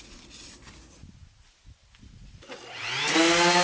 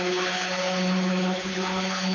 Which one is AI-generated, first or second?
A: second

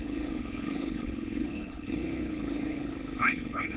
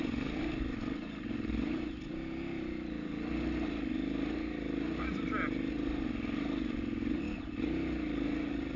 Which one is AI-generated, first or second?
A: first